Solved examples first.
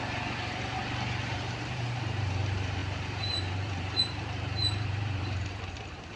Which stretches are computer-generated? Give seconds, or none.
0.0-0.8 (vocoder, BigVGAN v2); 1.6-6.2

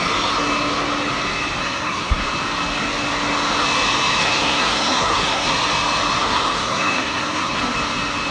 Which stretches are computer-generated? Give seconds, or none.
1.6-2.2 (codec, SNAC); 4.2-5.5; 6.2-7.6

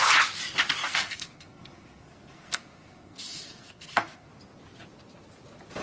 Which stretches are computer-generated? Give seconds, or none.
0.8-4.3 (codec, SNAC)

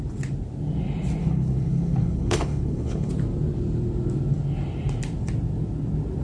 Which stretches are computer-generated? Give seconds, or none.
1.2-3.1 (codec, HILCodec)